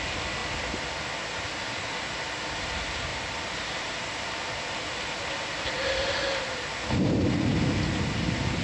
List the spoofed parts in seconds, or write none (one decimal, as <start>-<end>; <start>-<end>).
none